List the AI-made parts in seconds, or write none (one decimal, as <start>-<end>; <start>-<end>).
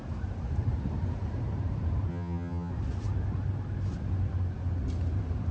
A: 2.1-2.7